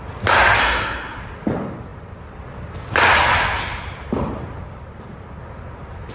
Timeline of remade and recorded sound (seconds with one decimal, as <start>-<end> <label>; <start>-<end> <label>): 0.0-0.6 recorded; 0.6-1.2 remade; 1.2-6.1 recorded